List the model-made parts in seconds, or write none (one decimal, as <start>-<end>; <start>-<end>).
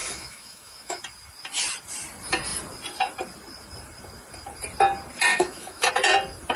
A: 0.0-1.0; 5.3-5.9